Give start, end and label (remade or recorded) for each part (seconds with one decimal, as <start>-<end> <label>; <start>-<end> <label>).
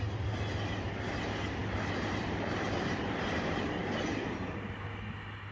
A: 0.0-1.6 recorded; 1.6-4.4 remade; 4.4-5.5 recorded